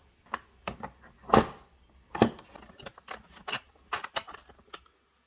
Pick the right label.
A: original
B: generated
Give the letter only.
A